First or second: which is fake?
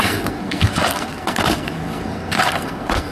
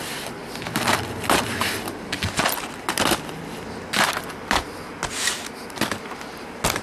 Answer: first